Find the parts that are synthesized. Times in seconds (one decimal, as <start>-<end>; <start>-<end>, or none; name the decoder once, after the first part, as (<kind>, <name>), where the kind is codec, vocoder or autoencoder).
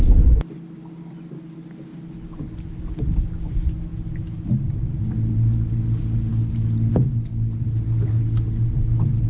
none